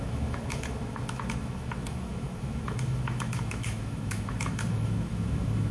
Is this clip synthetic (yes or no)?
yes